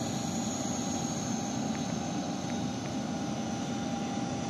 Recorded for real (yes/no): yes